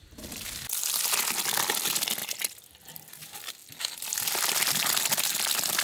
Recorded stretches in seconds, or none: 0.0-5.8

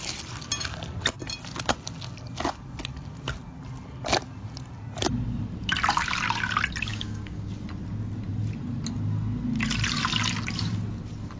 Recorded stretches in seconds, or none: 0.0-6.9; 7.5-11.4

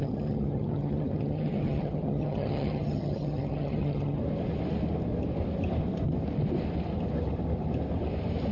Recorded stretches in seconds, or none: 4.2-8.5

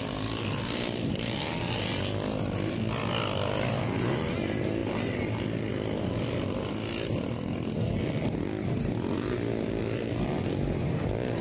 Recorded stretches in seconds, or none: 0.0-11.4

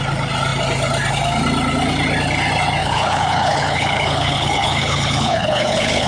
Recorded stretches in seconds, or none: 0.0-2.8

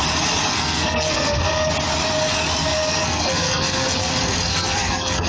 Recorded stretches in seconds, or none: 0.0-0.5; 1.7-2.6; 4.1-4.5